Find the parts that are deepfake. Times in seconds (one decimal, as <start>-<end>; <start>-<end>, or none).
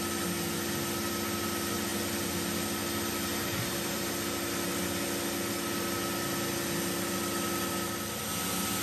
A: none